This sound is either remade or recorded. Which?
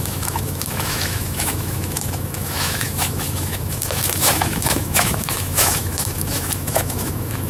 remade